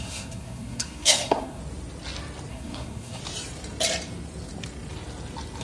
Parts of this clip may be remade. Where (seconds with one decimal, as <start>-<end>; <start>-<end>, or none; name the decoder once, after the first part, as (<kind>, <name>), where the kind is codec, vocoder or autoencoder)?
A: 0.0-1.6 (codec, SNAC); 2.5-3.2